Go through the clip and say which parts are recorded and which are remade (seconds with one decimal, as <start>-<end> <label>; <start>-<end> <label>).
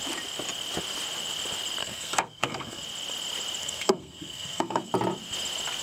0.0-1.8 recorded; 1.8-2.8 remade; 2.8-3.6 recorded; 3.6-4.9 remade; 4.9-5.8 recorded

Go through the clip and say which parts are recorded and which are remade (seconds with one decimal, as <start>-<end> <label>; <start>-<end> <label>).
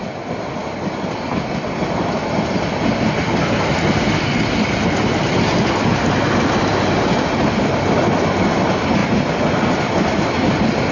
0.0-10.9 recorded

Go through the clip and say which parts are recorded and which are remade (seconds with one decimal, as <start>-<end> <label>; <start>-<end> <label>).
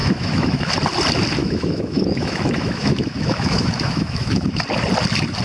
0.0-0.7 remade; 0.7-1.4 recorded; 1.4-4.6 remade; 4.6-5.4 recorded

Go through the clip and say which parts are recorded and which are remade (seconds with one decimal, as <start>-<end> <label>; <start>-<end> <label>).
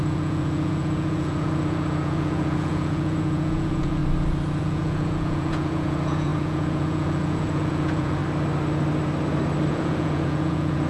0.0-4.0 remade; 4.0-4.6 recorded; 4.6-8.2 remade; 8.2-9.7 recorded; 9.7-10.9 remade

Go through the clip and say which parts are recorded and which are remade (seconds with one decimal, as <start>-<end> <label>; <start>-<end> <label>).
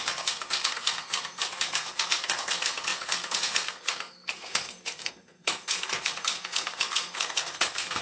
0.0-8.0 remade